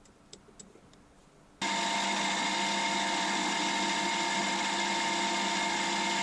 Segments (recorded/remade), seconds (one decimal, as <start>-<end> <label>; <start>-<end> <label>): 0.0-6.2 recorded